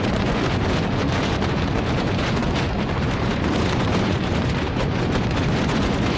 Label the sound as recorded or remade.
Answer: remade